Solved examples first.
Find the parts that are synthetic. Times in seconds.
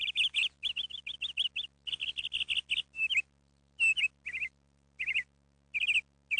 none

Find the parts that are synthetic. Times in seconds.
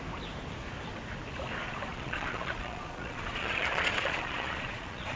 1.9-5.2 (vocoder, Vocos)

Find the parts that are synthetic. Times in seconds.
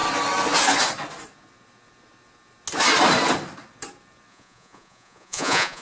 4.3-5.8 (vocoder, Vocos)